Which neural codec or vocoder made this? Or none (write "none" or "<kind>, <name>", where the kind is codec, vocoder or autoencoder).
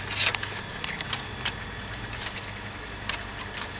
none